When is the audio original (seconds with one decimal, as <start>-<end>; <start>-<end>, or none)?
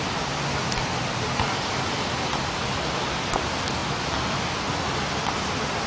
0.0-1.0; 2.3-5.9